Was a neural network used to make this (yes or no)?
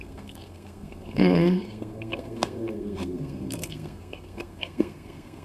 yes